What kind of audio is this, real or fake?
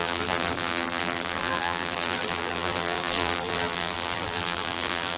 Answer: fake